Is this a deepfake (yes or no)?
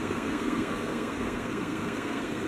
yes